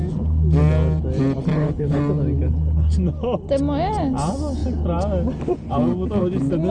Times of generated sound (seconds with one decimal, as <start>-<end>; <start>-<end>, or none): 1.5-2.0